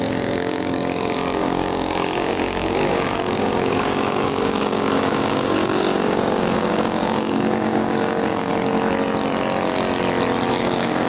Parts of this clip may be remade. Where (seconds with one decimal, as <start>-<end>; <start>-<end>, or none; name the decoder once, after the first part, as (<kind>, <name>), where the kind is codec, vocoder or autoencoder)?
0.0-8.5 (codec, DAC); 10.5-11.1